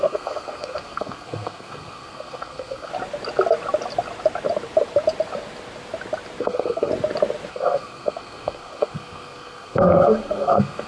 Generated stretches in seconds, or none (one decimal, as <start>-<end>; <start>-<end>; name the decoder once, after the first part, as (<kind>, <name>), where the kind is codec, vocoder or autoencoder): 0.0-2.9 (codec, SNAC); 6.4-6.9; 7.5-10.9